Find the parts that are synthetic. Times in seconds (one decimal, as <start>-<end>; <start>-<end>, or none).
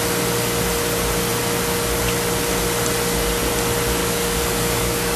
4.0-5.2